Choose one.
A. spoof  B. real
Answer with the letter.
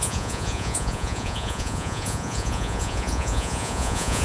A